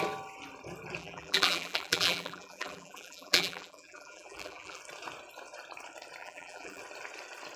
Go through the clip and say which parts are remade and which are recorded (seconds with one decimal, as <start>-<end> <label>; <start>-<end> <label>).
0.0-1.0 recorded; 1.0-4.8 remade; 4.8-6.2 recorded; 6.2-6.8 remade; 6.8-7.6 recorded